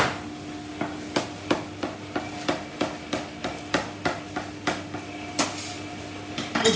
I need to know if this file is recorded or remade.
recorded